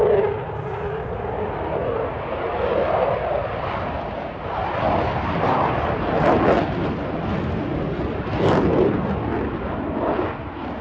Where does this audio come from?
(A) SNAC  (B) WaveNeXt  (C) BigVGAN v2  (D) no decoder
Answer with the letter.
D